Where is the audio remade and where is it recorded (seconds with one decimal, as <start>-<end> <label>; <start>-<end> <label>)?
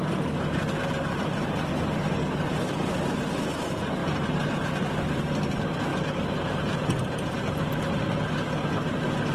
0.0-9.3 recorded